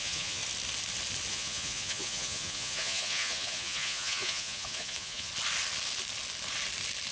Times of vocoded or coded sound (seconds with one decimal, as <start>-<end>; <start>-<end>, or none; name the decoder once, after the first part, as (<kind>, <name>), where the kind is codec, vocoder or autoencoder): 0.0-0.4 (vocoder, Vocos); 1.3-5.3

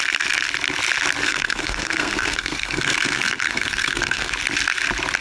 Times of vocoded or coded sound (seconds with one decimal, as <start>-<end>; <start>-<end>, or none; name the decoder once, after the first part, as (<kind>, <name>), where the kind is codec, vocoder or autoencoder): 1.2-4.3 (codec, SNAC)

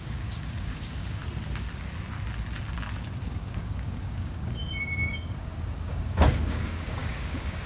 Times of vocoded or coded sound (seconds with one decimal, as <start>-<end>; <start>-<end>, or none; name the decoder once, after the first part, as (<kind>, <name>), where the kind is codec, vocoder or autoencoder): 0.0-1.2 (codec, DAC); 3.3-7.7

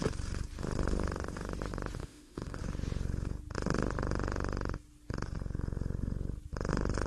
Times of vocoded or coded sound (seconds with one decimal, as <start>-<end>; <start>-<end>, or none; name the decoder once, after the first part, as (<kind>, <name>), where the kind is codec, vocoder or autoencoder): 2.0-2.6 (autoencoder, DAC-VAE)

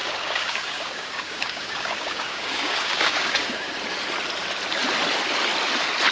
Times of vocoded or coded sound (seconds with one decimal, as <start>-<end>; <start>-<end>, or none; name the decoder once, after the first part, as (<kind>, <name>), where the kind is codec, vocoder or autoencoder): 0.0-3.7 (codec, DAC)

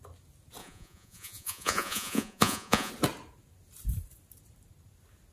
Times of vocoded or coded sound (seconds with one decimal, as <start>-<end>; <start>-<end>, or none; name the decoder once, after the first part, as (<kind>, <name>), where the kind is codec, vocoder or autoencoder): 0.6-2.9 (vocoder, Vocos)